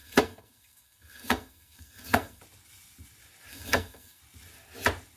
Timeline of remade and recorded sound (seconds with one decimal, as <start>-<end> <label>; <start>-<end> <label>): 0.0-2.4 remade; 2.4-3.5 recorded; 3.5-4.2 remade; 4.2-5.2 recorded